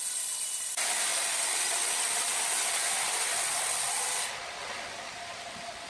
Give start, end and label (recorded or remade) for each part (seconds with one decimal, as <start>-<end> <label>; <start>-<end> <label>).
0.0-5.9 recorded